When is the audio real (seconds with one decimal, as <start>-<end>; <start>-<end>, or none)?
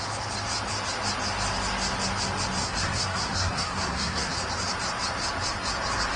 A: 0.0-2.6; 4.3-6.2